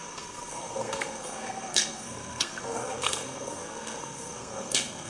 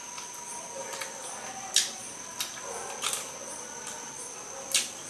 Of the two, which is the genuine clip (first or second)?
second